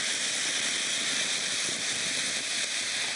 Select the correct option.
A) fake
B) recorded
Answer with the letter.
B